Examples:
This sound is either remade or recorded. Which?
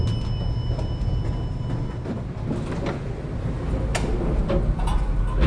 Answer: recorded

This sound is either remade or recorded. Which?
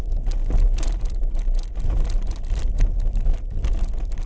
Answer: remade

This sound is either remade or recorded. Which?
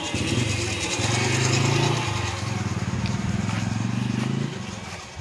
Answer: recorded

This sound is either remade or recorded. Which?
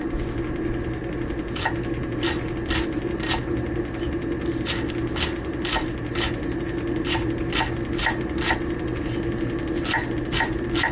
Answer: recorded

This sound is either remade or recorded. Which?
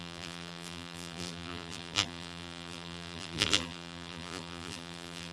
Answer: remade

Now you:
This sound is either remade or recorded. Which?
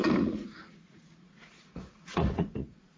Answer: remade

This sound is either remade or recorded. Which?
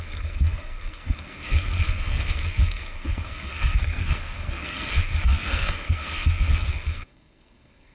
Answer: remade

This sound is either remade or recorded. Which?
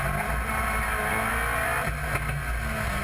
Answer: recorded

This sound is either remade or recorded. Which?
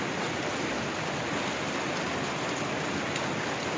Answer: recorded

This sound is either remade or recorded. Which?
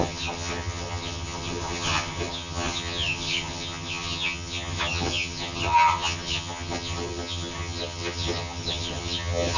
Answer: remade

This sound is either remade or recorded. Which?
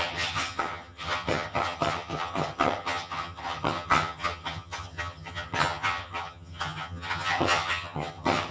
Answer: remade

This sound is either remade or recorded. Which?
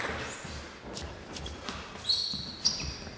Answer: recorded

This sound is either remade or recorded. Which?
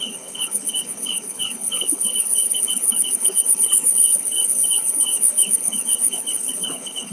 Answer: remade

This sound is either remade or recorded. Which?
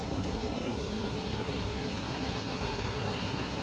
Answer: remade